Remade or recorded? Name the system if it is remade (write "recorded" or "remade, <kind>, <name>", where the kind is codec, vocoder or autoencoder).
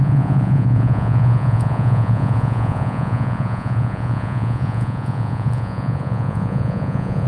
remade, vocoder, Vocos